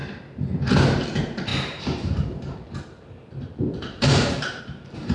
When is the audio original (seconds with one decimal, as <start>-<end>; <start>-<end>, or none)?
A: 0.0-0.6